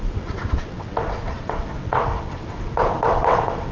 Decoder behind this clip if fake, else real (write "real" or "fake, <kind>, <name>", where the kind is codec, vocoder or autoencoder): fake, vocoder, WaveNeXt